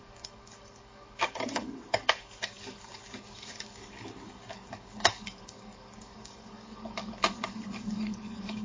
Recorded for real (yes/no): no